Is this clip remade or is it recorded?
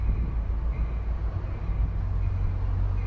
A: recorded